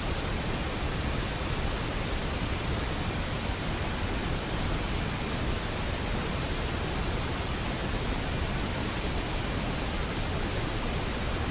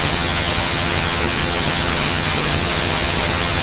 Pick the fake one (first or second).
second